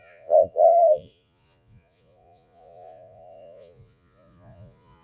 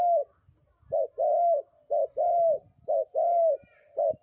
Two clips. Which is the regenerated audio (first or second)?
first